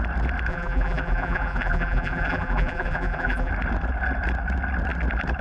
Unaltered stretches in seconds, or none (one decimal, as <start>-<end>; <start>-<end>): 0.0-0.5; 3.5-5.4